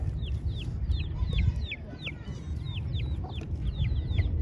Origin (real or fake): real